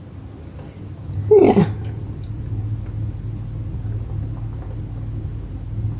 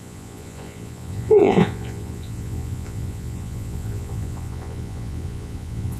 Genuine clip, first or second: first